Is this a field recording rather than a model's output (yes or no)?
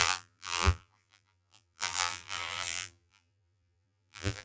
no